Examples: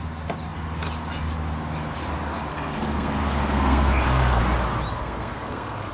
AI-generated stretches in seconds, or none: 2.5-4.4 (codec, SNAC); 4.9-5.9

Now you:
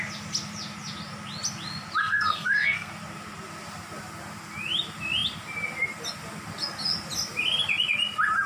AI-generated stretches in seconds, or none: 2.0-2.9 (codec, SNAC)

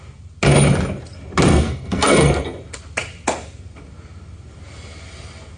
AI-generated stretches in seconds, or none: 1.5-2.3 (codec, SNAC)

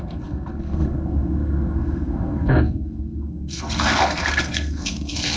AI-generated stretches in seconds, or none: 0.0-5.4 (codec, SNAC)

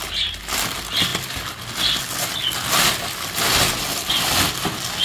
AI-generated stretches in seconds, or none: none